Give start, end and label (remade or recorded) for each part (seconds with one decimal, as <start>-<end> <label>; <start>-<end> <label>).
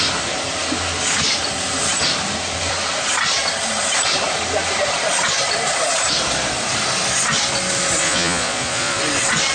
0.0-8.0 recorded; 8.0-9.0 remade; 9.0-9.5 recorded